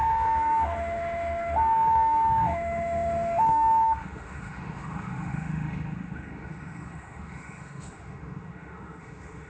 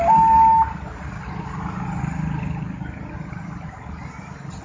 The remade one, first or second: first